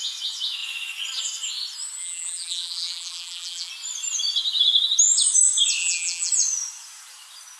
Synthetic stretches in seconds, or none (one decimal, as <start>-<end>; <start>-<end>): 2.0-3.7; 5.8-6.3